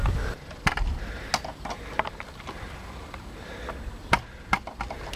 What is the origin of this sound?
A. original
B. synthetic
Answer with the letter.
A